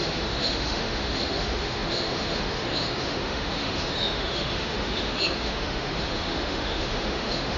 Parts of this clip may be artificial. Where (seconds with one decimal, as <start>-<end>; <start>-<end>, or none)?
0.0-7.6